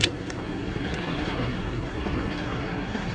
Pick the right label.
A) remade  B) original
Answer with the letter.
A